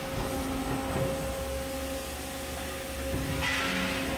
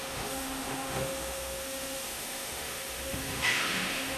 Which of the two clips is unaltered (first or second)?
first